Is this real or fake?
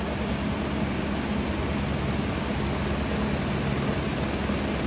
real